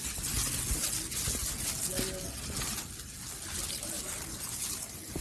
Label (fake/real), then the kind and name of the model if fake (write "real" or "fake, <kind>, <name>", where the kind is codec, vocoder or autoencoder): real